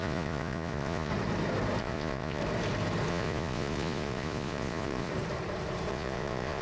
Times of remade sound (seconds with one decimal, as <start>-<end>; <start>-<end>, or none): 0.0-1.1; 1.8-2.4; 3.1-5.1; 5.9-6.6